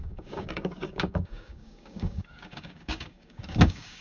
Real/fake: fake